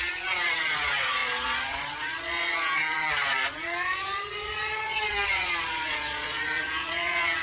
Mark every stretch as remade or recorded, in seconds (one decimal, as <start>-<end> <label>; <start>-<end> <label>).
0.0-7.4 remade